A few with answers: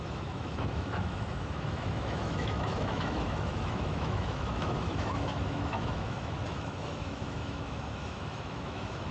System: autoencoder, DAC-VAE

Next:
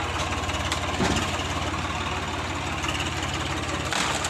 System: none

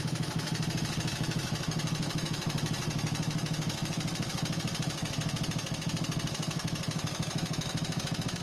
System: autoencoder, DAC-VAE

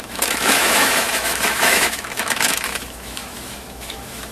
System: autoencoder, DAC-VAE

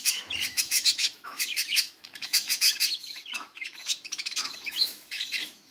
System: autoencoder, DAC-VAE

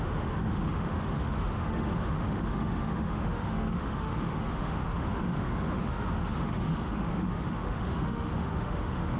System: autoencoder, DAC-VAE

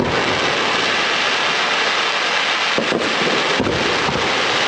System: none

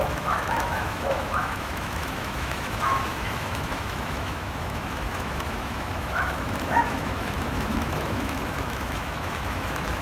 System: autoencoder, DAC-VAE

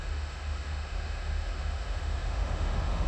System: autoencoder, DAC-VAE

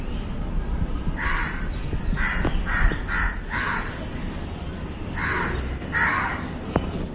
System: none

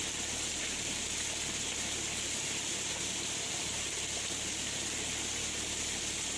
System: none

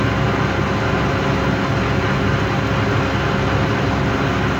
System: none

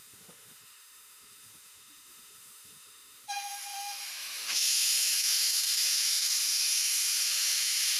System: autoencoder, DAC-VAE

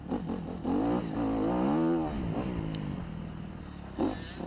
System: none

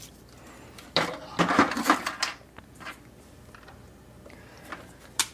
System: none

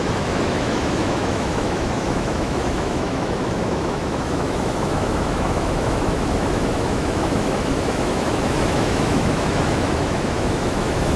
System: autoencoder, DAC-VAE